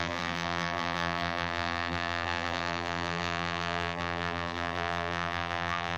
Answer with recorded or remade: remade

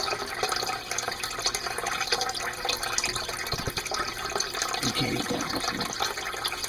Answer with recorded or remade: recorded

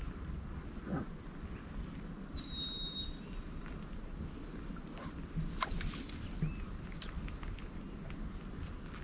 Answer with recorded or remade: recorded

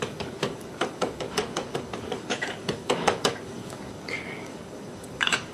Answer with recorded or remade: remade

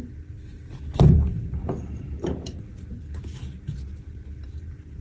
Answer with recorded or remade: remade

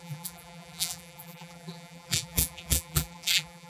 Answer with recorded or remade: remade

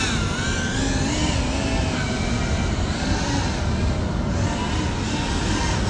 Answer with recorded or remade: recorded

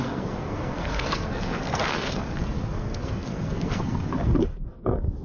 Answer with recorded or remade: remade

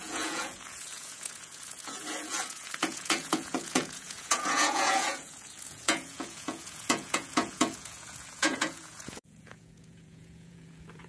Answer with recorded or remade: remade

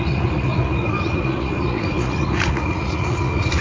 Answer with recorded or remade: remade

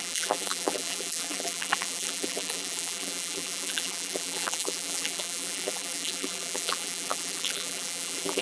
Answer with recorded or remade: remade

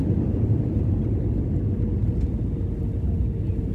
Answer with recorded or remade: recorded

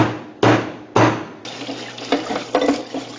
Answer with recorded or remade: recorded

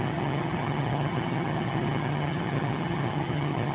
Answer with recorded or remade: remade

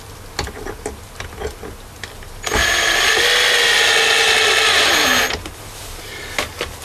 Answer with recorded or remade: recorded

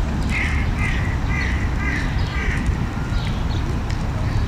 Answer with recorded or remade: recorded